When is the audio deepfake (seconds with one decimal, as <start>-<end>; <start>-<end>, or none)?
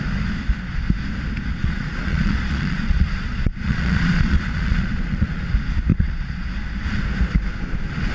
1.6-5.4; 5.9-6.4